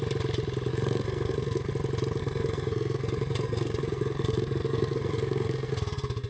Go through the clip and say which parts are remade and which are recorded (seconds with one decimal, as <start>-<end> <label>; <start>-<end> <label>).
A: 0.0-0.7 recorded; 0.7-1.7 remade; 1.7-2.2 recorded; 2.2-6.3 remade